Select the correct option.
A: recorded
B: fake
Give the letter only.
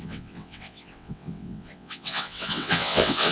B